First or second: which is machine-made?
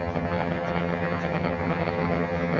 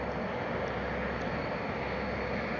first